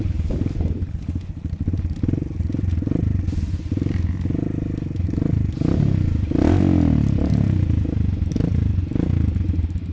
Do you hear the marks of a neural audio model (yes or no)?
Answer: no